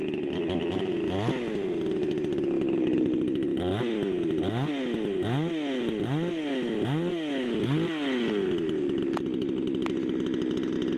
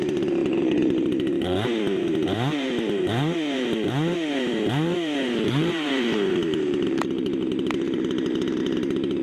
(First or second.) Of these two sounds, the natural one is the first